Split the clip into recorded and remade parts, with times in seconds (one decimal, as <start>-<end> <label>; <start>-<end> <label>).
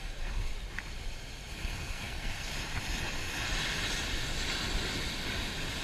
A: 0.0-0.5 remade; 0.5-1.5 recorded; 1.5-2.5 remade; 2.5-5.8 recorded